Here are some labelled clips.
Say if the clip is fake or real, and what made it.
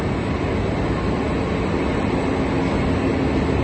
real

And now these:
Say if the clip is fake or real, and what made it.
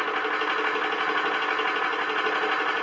real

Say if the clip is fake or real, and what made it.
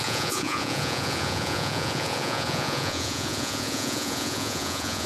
fake, vocoder, Vocos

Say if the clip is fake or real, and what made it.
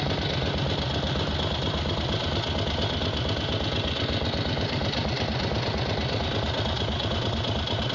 real